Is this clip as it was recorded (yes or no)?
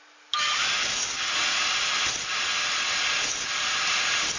yes